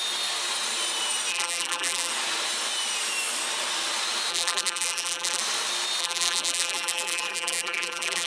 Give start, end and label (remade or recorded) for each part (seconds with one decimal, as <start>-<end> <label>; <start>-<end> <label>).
0.0-1.3 recorded; 1.3-2.1 remade; 2.1-4.3 recorded; 4.3-5.4 remade; 5.4-6.0 recorded; 6.0-8.3 remade